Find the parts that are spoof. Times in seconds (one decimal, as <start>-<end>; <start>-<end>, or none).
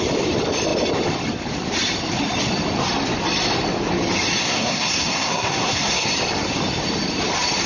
4.4-6.1